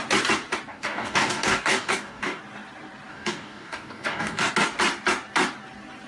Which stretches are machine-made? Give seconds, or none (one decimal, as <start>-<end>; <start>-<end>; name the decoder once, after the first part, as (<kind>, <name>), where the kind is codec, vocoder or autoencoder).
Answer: 0.7-2.4 (codec, DAC); 3.1-4.5

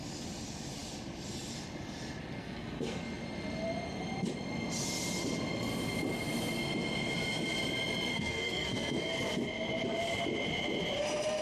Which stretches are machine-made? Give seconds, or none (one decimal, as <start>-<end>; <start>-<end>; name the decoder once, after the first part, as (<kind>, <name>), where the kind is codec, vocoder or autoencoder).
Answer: 2.4-3.0 (codec, SNAC); 8.1-9.1

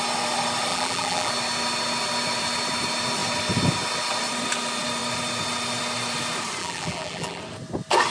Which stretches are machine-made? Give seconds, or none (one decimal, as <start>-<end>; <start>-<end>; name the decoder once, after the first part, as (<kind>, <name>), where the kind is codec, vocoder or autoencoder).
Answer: 0.7-1.3 (vocoder, BigVGAN v2); 6.6-7.4

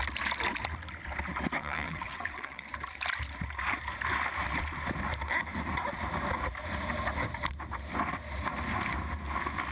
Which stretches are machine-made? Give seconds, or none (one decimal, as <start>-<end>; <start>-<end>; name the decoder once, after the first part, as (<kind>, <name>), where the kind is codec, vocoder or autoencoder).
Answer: 1.6-2.7 (vocoder, WaveNeXt)

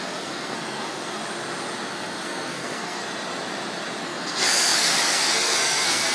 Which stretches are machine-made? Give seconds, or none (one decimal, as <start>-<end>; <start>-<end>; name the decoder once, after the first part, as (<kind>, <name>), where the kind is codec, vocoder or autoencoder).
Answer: 0.0-1.2 (codec, SNAC); 1.9-3.0; 4.0-6.1

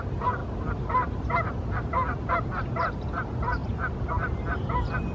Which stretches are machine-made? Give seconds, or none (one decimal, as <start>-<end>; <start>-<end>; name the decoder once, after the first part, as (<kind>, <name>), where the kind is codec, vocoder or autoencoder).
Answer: none